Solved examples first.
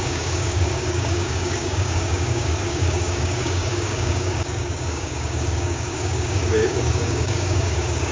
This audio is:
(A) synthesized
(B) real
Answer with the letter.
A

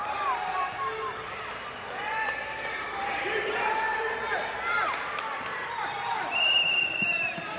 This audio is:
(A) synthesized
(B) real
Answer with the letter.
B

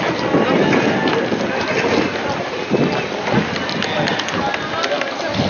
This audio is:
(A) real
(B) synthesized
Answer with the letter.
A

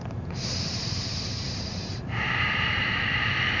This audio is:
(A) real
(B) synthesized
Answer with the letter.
B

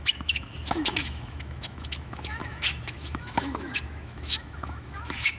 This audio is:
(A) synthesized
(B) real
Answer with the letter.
A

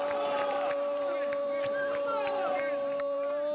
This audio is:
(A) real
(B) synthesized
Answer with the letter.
B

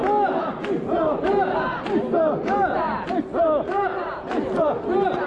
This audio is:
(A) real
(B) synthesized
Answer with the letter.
A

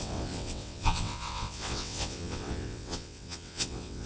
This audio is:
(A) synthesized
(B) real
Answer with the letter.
A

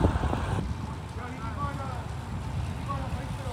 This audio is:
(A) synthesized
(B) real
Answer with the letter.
B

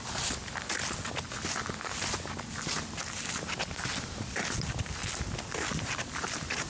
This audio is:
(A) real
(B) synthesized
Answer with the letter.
A